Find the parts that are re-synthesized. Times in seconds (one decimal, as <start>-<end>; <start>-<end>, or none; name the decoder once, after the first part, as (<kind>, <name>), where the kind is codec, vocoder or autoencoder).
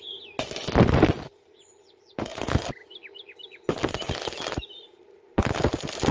none